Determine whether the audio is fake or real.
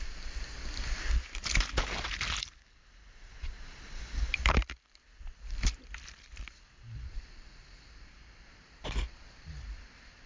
real